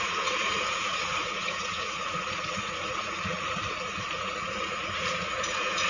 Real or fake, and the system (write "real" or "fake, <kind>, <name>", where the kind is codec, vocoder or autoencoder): fake, vocoder, Vocos